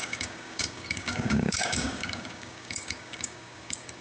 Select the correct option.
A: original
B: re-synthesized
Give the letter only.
B